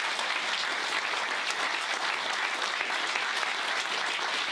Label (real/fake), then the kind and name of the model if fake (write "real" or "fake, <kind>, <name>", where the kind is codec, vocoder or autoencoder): real